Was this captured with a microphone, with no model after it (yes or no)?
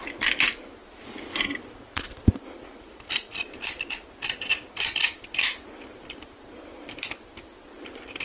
no